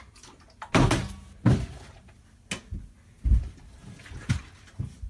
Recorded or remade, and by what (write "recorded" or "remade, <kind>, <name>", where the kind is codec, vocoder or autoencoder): recorded